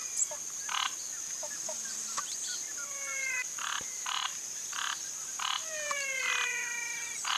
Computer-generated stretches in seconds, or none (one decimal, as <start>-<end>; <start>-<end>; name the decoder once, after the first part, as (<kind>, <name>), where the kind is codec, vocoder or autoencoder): 1.9-6.3 (vocoder, BigVGAN v2)